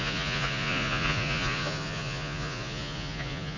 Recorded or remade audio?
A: remade